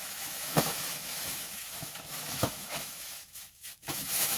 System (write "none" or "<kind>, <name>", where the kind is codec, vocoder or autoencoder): autoencoder, DAC-VAE